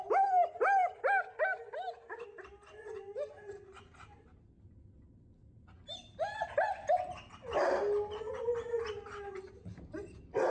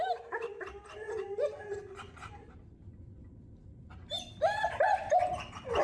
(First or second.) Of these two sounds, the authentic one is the first